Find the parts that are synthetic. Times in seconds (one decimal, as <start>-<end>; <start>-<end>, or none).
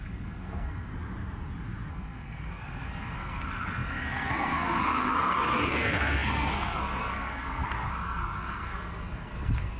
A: 0.0-0.9; 1.9-9.8